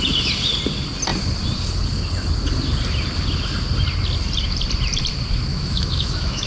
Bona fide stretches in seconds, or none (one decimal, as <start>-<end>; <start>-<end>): 0.0-5.5